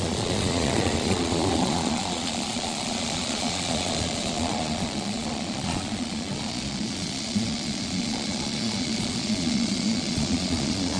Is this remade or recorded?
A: remade